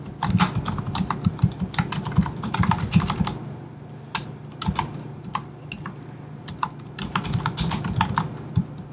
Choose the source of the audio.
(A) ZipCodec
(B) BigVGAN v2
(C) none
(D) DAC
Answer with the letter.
C